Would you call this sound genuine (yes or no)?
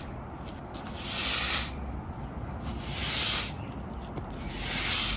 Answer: yes